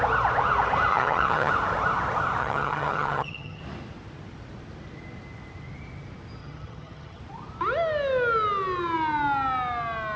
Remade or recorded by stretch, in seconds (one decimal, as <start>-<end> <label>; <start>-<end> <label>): 0.0-0.9 recorded; 0.9-1.5 remade; 1.5-2.4 recorded; 2.4-3.6 remade; 3.6-6.4 recorded; 6.4-7.2 remade; 7.2-10.2 recorded